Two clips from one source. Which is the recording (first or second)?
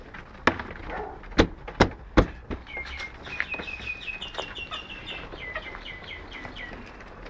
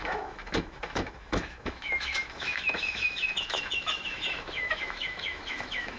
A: first